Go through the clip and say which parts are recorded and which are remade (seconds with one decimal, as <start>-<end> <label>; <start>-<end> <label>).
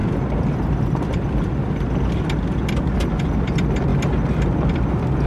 0.0-5.3 recorded